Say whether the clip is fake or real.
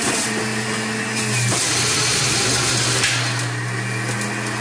real